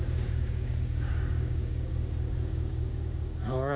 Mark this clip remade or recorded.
remade